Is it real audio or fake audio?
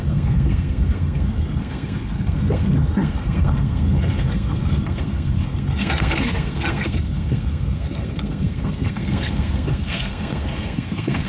fake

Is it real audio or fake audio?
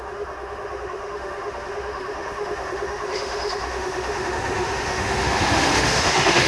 fake